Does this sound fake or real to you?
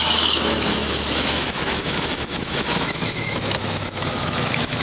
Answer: fake